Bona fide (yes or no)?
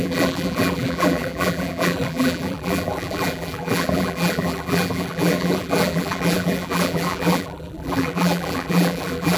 no